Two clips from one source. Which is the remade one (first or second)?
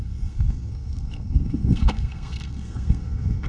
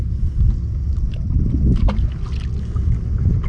first